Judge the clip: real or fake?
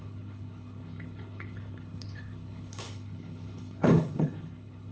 fake